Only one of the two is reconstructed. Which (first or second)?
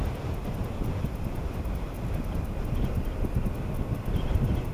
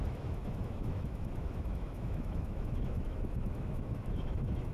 second